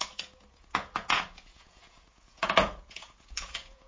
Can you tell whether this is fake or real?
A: fake